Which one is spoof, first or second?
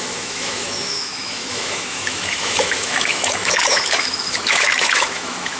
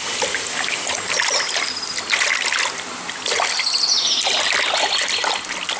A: first